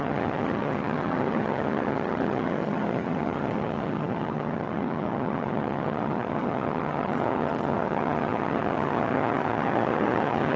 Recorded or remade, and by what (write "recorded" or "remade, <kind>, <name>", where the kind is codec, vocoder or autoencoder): remade, vocoder, HiFi-GAN